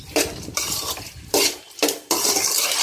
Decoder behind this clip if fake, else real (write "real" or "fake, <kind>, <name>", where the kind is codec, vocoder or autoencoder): real